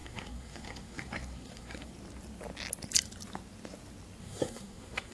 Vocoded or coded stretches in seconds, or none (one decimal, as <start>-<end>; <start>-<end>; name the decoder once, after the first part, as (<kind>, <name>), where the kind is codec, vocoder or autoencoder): 0.0-1.9 (codec, SNAC); 4.2-5.1